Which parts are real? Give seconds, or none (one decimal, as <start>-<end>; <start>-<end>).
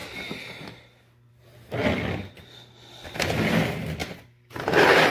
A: 0.0-5.1